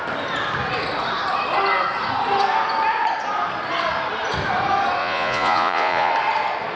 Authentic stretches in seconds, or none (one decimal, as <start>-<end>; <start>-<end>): 0.0-5.0; 6.1-6.8